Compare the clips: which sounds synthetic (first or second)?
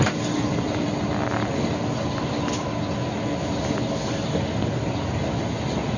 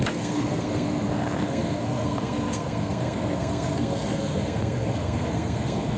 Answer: second